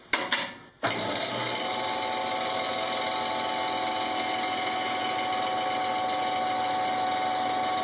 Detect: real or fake real